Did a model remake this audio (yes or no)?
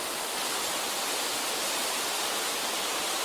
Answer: no